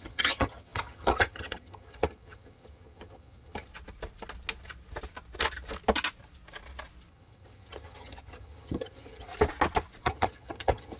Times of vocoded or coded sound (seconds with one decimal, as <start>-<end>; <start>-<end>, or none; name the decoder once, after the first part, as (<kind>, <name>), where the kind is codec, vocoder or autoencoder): 0.0-3.7 (vocoder, HiFi-GAN); 7.1-9.3; 10.0-11.0